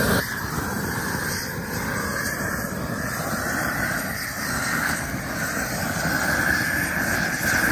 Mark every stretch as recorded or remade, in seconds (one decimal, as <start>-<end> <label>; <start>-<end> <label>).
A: 0.0-4.4 recorded; 4.4-5.2 remade; 5.2-7.7 recorded